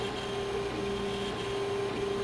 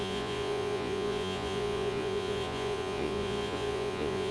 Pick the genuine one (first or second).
first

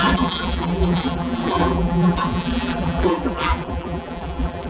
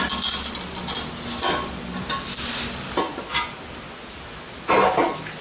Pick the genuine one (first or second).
second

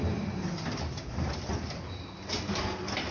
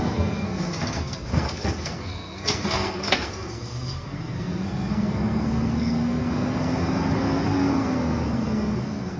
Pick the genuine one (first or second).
first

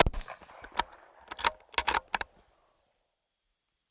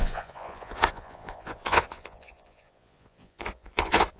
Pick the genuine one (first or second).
first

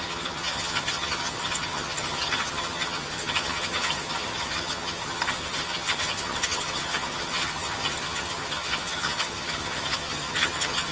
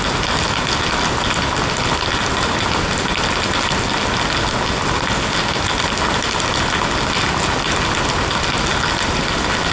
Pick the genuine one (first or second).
second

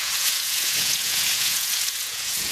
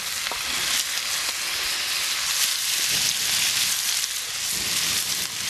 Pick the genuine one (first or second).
second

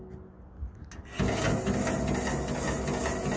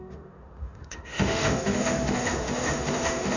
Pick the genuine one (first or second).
first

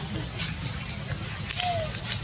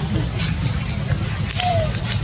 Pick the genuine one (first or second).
first